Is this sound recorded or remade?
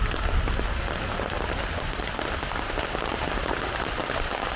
remade